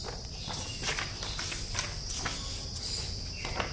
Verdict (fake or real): fake